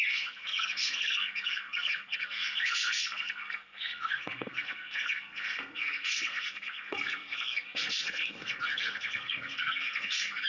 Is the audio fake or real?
fake